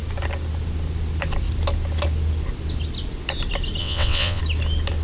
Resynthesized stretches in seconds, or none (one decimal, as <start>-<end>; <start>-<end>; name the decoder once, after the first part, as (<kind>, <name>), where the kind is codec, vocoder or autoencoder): 3.8-4.4 (vocoder, WaveNeXt)